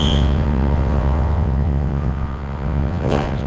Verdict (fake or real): fake